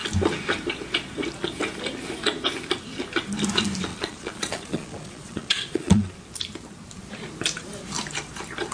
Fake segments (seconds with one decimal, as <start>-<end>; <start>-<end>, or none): 3.9-6.1